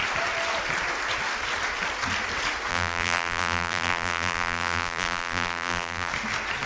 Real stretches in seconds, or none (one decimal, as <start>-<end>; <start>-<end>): 0.0-2.7; 6.1-6.7